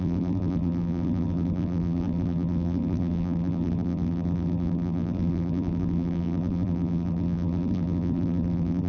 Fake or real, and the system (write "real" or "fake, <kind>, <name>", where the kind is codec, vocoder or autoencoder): fake, vocoder, BigVGAN v2